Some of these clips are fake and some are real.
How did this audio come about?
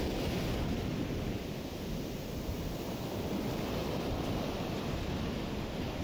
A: real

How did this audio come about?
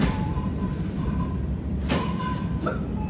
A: fake